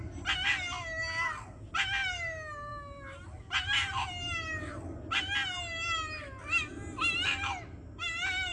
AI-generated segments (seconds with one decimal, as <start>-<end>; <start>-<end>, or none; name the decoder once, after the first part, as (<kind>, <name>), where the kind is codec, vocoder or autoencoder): none